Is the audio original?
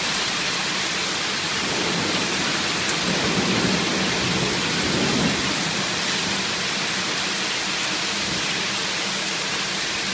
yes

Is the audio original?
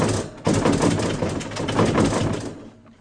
yes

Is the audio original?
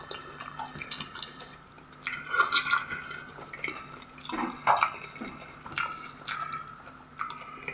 yes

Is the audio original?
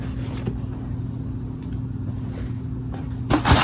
yes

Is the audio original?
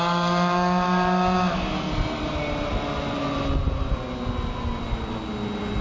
yes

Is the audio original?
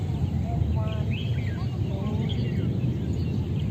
yes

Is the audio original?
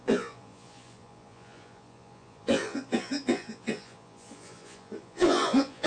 no